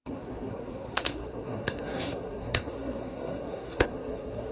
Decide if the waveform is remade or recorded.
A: remade